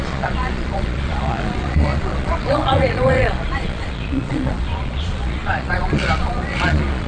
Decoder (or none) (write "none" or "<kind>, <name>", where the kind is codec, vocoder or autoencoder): vocoder, Vocos